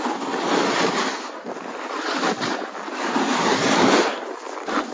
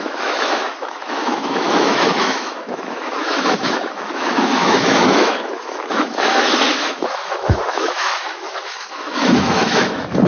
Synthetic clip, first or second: second